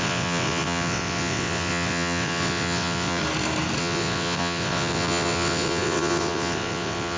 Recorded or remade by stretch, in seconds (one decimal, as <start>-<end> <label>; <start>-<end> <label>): 0.0-3.2 remade; 3.2-3.8 recorded; 3.8-7.2 remade